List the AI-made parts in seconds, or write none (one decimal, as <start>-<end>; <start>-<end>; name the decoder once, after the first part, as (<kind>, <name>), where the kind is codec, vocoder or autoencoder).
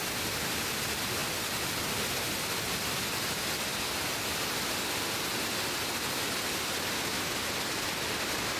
none